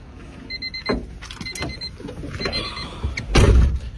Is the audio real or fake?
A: real